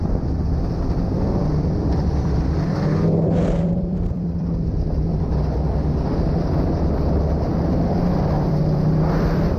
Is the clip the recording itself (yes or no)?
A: no